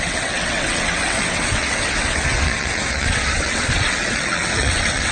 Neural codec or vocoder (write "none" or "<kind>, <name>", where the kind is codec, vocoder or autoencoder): vocoder, WaveNeXt